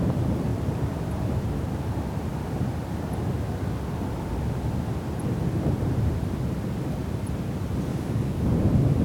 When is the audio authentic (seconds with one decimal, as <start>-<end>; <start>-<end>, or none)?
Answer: 0.0-7.9; 8.5-9.0